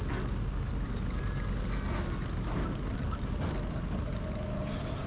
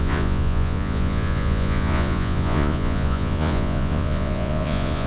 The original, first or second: first